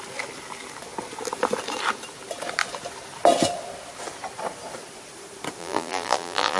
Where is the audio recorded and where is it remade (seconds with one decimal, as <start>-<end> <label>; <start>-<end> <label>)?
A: 0.0-5.6 recorded; 5.6-6.6 remade